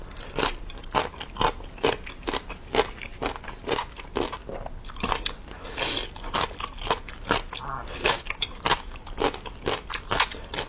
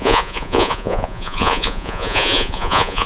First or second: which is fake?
second